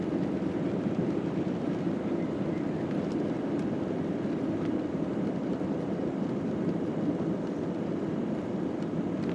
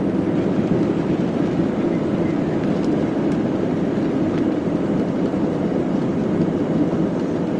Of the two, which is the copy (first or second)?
first